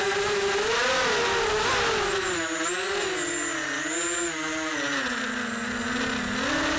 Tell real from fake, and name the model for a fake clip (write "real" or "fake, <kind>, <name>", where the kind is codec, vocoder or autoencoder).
real